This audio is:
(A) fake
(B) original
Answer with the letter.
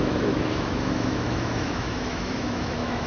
A